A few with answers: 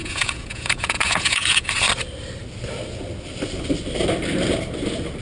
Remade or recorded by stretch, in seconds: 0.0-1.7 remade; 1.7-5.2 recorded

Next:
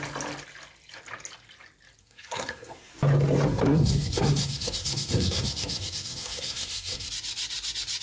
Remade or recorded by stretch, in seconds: 0.0-2.0 recorded; 2.0-2.9 remade; 2.9-3.5 recorded; 3.5-7.1 remade; 7.1-8.0 recorded

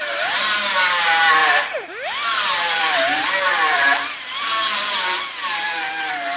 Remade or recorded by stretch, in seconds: 0.0-6.4 remade

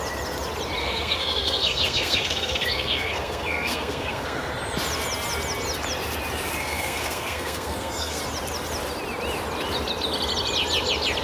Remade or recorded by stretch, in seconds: 0.0-0.8 recorded; 0.8-4.5 remade; 4.5-6.6 recorded; 6.6-8.2 remade; 8.2-11.2 recorded

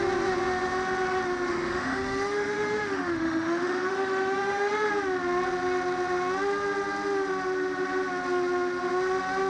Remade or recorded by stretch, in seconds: 0.0-1.5 recorded; 1.5-4.9 remade; 4.9-9.5 recorded